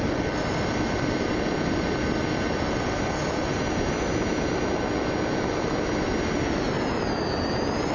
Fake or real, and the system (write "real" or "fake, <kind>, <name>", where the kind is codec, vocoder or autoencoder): real